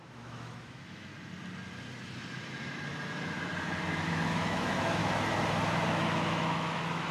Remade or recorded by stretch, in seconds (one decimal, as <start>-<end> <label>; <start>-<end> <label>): 0.0-1.1 remade; 1.1-4.1 recorded; 4.1-5.0 remade; 5.0-5.9 recorded; 5.9-7.1 remade

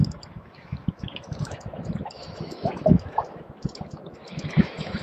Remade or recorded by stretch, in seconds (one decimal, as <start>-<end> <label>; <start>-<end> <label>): 0.0-5.0 remade

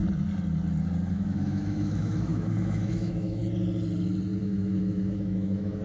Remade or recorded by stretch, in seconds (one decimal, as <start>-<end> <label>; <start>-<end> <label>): 0.0-1.1 recorded; 1.1-3.4 remade; 3.4-4.4 recorded; 4.4-5.8 remade

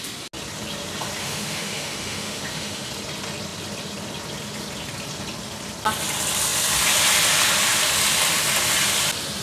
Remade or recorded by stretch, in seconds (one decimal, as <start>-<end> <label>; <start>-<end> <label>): 0.0-1.2 recorded; 1.2-2.9 remade; 2.9-9.4 recorded

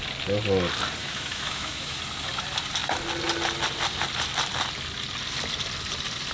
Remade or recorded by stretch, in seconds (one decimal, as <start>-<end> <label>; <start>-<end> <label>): 0.0-1.0 recorded; 1.0-2.0 remade; 2.0-6.3 recorded